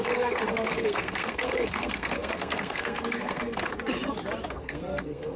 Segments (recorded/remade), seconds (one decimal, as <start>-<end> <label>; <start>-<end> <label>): 0.0-3.7 remade; 3.7-4.5 recorded; 4.5-5.4 remade